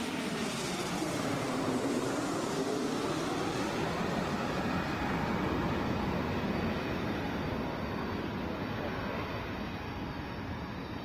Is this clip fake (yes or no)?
no